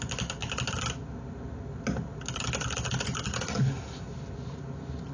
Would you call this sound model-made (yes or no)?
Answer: no